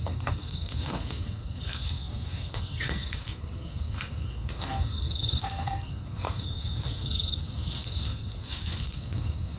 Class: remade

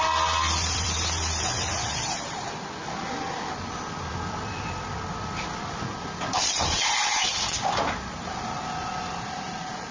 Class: recorded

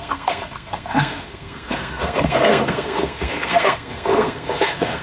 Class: remade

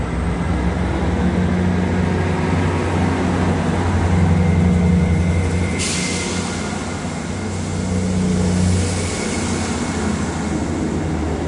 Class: recorded